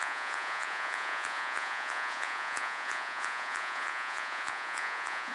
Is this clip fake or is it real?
fake